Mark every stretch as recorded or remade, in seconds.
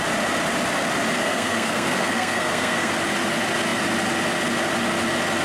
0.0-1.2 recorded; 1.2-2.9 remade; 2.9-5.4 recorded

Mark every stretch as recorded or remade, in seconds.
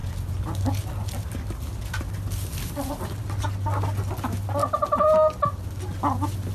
0.0-6.5 recorded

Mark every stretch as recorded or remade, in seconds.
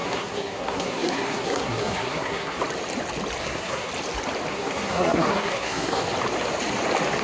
0.0-2.6 remade; 2.6-3.4 recorded; 3.4-3.9 remade; 3.9-4.5 recorded; 4.5-6.0 remade; 6.0-7.2 recorded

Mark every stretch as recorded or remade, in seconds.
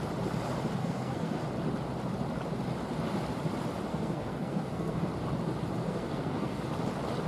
0.0-0.8 recorded; 0.8-1.4 remade; 1.4-3.9 recorded; 3.9-5.1 remade; 5.1-5.8 recorded; 5.8-6.6 remade; 6.6-7.3 recorded